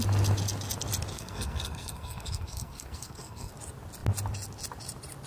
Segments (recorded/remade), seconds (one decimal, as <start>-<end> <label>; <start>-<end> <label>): 0.0-1.1 recorded; 1.1-3.5 remade; 3.5-5.3 recorded